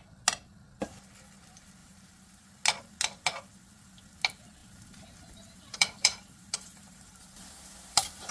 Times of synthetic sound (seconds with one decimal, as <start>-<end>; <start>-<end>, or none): 1.8-2.5; 4.6-8.3